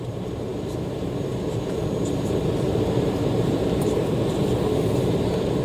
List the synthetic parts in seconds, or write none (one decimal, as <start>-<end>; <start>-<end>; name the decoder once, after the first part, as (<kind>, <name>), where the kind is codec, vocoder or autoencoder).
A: 0.0-5.6 (vocoder, BigVGAN v2)